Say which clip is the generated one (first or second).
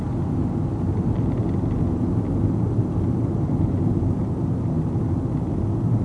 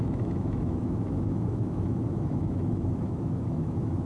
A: second